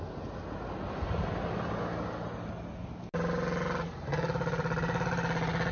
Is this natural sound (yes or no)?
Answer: yes